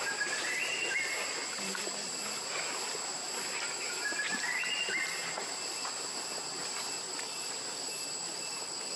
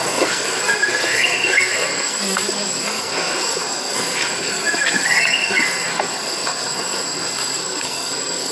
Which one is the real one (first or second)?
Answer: first